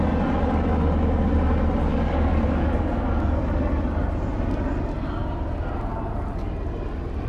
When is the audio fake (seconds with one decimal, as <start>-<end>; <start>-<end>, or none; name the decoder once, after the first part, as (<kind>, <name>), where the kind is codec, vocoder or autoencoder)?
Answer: 1.9-3.6 (codec, DAC)